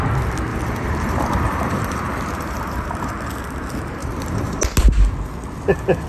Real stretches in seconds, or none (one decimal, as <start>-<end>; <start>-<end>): 0.0-0.5; 3.1-4.0; 4.6-6.1